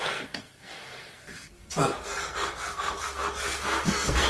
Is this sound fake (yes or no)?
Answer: yes